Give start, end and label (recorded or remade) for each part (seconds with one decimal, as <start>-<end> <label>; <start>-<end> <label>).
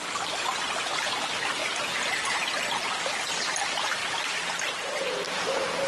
0.0-5.9 recorded